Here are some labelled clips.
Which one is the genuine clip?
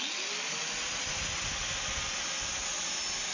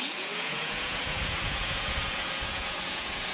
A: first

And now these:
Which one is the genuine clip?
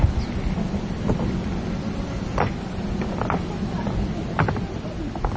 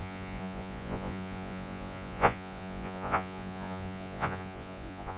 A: first